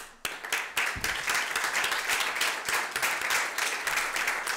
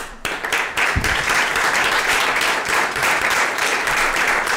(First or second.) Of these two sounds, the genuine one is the first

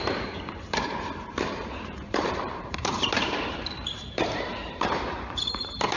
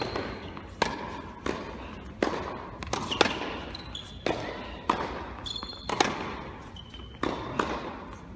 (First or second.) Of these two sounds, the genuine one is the second